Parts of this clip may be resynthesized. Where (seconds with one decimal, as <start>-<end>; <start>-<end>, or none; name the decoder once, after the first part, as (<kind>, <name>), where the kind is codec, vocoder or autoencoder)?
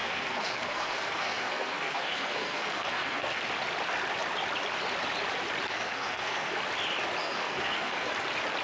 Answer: 0.0-3.4 (codec, SNAC); 5.7-6.6; 7.2-8.1